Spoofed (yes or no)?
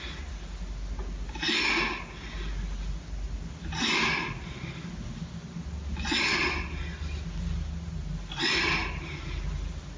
no